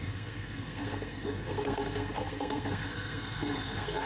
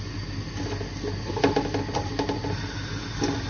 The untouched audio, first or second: second